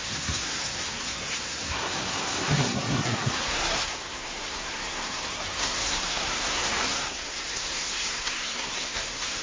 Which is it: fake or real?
fake